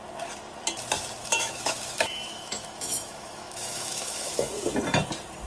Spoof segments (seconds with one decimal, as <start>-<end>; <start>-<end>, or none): 1.2-4.5